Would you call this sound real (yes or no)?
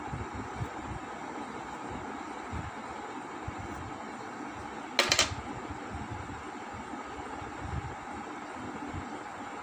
yes